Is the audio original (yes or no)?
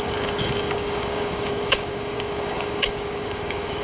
no